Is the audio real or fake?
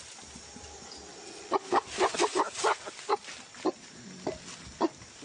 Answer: real